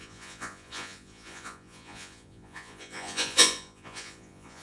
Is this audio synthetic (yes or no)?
yes